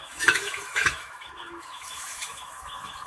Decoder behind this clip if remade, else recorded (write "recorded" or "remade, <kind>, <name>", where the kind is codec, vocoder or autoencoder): remade, autoencoder, DAC-VAE